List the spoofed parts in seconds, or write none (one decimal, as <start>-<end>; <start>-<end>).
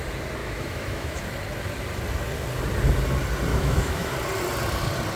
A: 0.4-1.2; 3.5-4.1